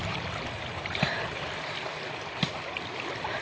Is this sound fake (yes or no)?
no